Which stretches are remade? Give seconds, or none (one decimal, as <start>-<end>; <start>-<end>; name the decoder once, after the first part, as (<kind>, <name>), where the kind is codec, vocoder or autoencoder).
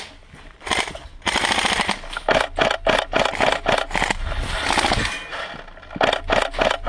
none